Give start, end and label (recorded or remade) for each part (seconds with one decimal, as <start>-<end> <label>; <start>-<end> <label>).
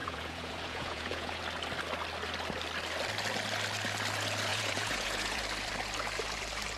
0.0-1.4 remade; 1.4-4.5 recorded; 4.5-5.4 remade; 5.4-6.8 recorded